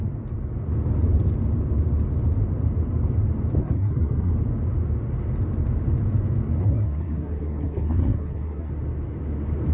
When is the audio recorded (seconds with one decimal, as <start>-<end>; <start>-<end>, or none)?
0.0-3.6; 4.3-6.6; 8.7-9.7